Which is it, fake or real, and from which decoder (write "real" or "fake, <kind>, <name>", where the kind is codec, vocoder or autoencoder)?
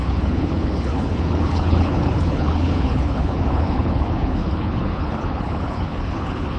fake, codec, HILCodec